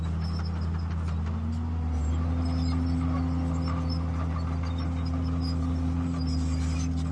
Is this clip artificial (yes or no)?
no